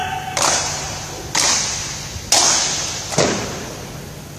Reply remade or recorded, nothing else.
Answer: recorded